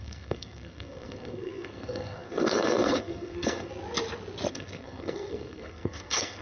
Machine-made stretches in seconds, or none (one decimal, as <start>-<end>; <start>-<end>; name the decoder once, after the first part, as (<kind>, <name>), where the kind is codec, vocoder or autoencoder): 0.0-3.7 (codec, SNAC); 4.5-6.4